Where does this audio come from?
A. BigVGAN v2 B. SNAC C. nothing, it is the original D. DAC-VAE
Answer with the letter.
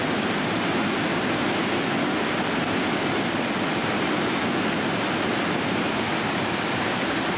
C